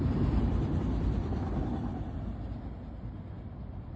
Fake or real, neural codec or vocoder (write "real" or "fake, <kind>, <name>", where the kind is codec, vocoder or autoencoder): real